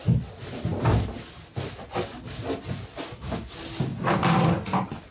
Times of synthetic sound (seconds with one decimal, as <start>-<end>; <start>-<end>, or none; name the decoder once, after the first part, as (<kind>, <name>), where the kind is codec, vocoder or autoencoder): none